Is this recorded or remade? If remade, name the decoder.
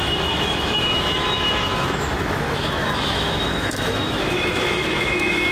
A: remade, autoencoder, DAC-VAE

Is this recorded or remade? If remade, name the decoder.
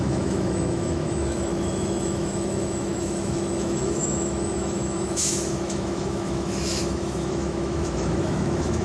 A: remade, autoencoder, DAC-VAE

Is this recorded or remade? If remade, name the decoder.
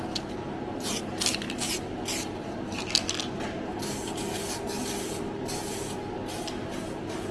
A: recorded